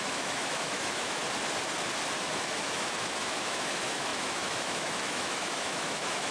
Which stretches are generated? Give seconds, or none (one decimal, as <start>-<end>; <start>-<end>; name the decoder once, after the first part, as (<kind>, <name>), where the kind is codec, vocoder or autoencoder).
0.0-1.2 (autoencoder, DAC-VAE); 2.2-6.3

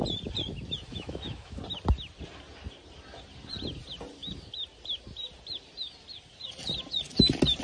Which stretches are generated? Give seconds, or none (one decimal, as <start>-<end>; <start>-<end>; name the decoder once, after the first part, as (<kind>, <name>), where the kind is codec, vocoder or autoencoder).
0.9-1.6 (autoencoder, DAC-VAE)

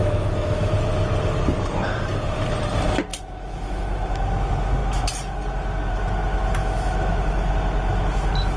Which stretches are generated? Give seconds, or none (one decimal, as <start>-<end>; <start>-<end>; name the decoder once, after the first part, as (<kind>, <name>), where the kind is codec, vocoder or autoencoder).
0.0-0.7 (autoencoder, DAC-VAE); 3.1-3.8; 6.6-7.5

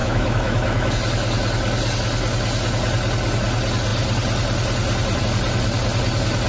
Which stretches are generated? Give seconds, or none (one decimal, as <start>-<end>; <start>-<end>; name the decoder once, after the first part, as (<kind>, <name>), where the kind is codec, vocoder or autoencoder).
0.0-0.9 (autoencoder, DAC-VAE)

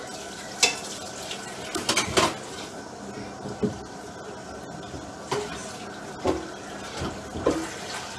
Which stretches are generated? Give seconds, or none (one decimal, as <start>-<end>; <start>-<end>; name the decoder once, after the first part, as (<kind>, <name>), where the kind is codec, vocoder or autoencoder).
none

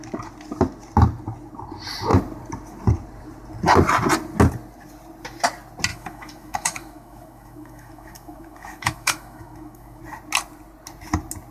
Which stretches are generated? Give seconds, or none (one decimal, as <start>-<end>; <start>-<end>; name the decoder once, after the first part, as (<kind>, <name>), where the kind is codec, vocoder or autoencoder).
5.9-10.0 (autoencoder, DAC-VAE)

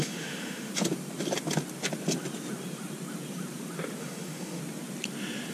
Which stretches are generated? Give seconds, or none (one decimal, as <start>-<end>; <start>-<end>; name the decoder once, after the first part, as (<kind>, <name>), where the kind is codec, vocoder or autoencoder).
0.0-0.7 (autoencoder, DAC-VAE); 4.0-4.6

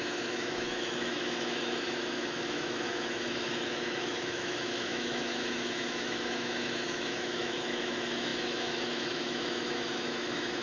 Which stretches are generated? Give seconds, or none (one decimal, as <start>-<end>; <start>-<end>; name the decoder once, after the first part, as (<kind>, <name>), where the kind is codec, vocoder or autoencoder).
0.0-10.6 (autoencoder, DAC-VAE)